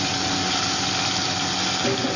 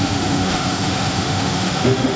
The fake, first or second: second